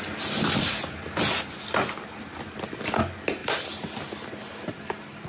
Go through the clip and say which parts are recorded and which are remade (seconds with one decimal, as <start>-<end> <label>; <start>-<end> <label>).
0.0-5.3 recorded